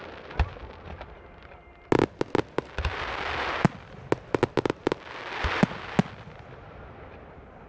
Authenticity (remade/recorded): recorded